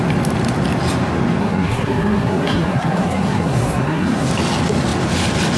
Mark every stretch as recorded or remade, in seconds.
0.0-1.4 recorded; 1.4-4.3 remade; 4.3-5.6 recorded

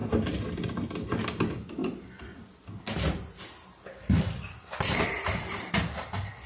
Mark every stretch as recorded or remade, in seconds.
0.0-6.5 recorded

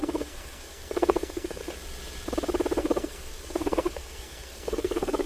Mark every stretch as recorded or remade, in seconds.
0.0-1.6 remade; 1.6-2.8 recorded; 2.8-5.3 remade

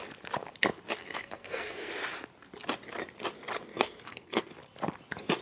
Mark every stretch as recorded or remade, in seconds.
0.0-1.0 recorded; 1.0-1.9 remade; 1.9-3.7 recorded; 3.7-4.5 remade; 4.5-5.4 recorded

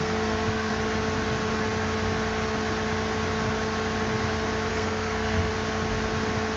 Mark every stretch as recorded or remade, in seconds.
0.0-0.7 remade; 0.7-4.7 recorded; 4.7-5.5 remade; 5.5-6.6 recorded

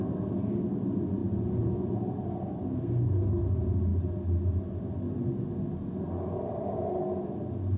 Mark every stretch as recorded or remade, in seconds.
0.0-2.7 recorded; 2.7-3.3 remade; 3.3-7.8 recorded